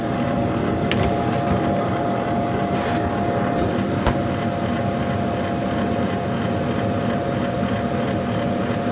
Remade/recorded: recorded